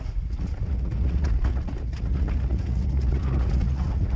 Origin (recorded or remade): remade